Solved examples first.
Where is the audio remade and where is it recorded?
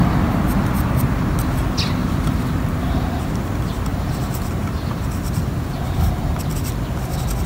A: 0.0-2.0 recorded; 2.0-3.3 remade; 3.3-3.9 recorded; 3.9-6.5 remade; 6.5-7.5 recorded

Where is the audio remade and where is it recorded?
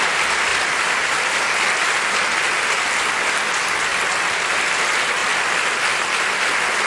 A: 0.0-0.5 recorded; 0.5-1.3 remade; 1.3-6.9 recorded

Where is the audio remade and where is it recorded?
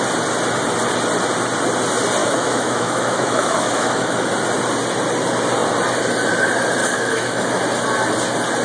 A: 0.0-2.2 recorded; 2.2-4.3 remade; 4.3-6.8 recorded; 6.8-7.6 remade; 7.6-8.6 recorded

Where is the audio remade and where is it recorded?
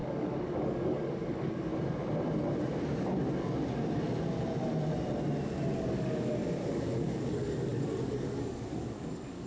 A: 0.0-1.7 remade; 1.7-5.7 recorded; 5.7-9.5 remade